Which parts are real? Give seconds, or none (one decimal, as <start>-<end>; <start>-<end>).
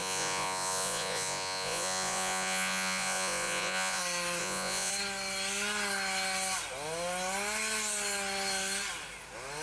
4.0-4.4; 4.9-9.6